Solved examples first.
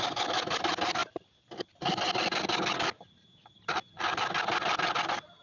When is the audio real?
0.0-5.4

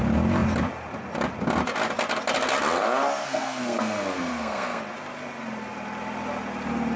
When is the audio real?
0.0-3.2; 4.8-7.0

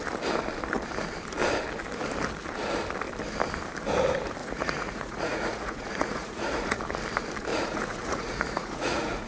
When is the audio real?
0.0-4.4; 6.8-7.5

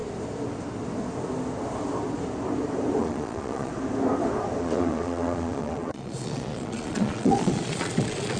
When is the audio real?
0.0-3.0; 3.7-4.6

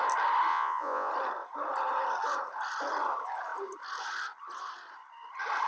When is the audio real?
0.0-0.5; 1.1-5.7